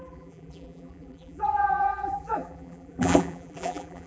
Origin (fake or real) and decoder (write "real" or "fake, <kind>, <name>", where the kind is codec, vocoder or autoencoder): fake, vocoder, BigVGAN v2